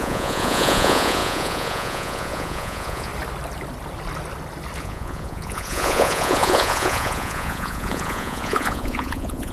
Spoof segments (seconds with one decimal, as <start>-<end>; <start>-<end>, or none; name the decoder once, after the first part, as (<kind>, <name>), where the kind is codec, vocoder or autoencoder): 0.0-3.1 (vocoder, Vocos); 4.8-9.5

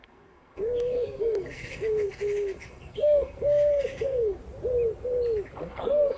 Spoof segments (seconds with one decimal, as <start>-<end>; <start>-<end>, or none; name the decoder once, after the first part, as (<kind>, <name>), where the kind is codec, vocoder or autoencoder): 0.0-4.4 (codec, SNAC); 5.6-6.2

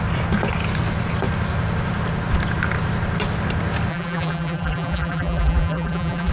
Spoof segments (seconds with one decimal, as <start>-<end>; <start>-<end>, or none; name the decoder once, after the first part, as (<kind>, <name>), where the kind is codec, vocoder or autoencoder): 3.9-6.3 (vocoder, BigVGAN v2)

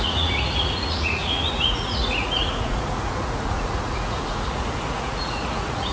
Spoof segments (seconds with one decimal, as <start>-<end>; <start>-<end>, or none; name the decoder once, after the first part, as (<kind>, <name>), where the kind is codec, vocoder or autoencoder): 0.0-5.9 (vocoder, Vocos)

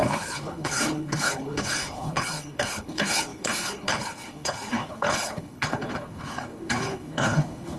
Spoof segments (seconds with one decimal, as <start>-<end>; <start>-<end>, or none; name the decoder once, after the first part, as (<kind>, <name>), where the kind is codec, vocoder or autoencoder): 0.0-7.8 (codec, HILCodec)

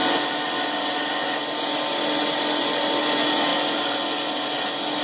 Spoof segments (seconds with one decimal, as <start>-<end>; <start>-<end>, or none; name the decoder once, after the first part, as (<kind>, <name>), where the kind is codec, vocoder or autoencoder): none

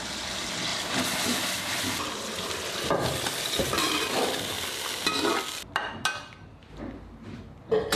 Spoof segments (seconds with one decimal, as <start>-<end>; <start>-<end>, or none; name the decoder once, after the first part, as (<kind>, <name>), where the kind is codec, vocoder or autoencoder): 0.7-4.7 (vocoder, BigVGAN v2)

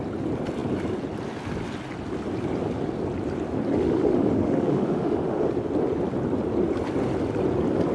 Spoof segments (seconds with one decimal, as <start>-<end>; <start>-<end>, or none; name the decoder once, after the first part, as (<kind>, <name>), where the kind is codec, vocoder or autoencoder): 3.7-5.5 (autoencoder, DAC-VAE)